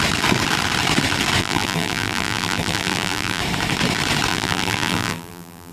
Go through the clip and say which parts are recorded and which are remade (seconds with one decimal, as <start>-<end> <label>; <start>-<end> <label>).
0.0-1.4 recorded; 1.4-3.4 remade; 3.4-4.3 recorded; 4.3-5.7 remade